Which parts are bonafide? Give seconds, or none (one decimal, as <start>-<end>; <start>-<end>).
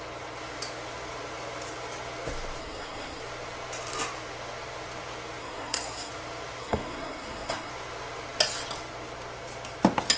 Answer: 0.0-2.6; 3.2-5.4; 6.1-6.6; 7.7-10.2